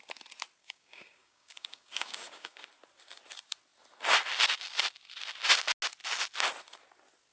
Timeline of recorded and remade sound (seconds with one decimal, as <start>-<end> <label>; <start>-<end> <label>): 0.0-0.6 recorded; 0.6-2.7 remade; 2.7-7.3 recorded